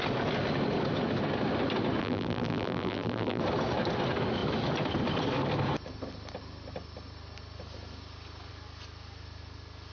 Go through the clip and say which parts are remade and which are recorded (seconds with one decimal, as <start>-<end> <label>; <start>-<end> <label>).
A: 0.0-2.0 recorded; 2.0-3.4 remade; 3.4-9.9 recorded

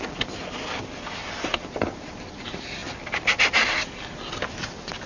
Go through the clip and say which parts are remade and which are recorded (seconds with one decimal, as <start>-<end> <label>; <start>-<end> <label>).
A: 0.0-5.1 recorded